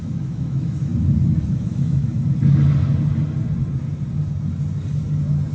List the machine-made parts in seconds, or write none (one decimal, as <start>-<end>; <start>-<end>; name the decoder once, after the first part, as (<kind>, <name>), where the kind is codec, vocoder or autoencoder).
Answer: 0.0-0.9 (autoencoder, DAC-VAE); 1.5-2.1